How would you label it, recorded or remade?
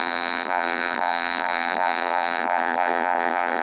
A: remade